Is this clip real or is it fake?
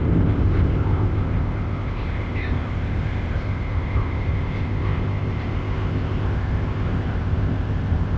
fake